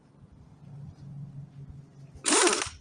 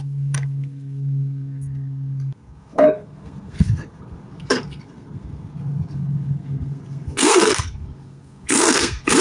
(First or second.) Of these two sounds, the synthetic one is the second